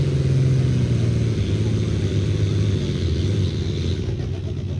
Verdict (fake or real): real